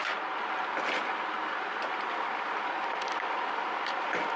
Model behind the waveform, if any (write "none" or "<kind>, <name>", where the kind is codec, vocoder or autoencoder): none